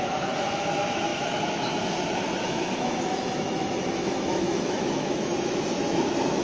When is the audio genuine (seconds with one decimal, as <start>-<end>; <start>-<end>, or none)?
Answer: none